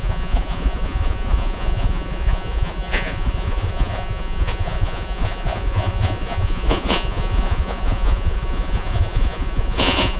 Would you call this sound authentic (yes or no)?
no